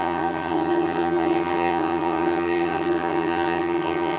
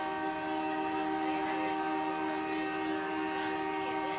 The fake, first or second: first